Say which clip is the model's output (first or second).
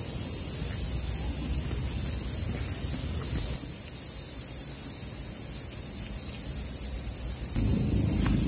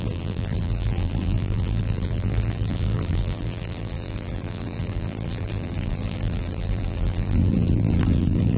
second